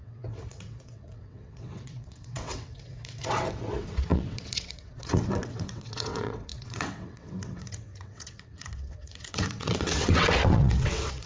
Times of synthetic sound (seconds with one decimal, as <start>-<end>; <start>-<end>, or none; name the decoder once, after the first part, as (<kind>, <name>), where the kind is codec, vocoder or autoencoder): 0.0-11.3 (vocoder, WaveNeXt)